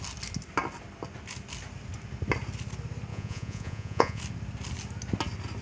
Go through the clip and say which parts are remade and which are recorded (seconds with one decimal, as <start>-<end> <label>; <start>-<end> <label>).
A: 0.0-3.1 recorded; 3.1-4.2 remade; 4.2-5.6 recorded